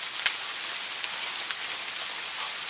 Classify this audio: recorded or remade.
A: recorded